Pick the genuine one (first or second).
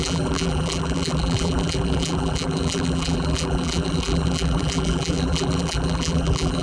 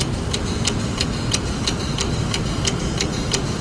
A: second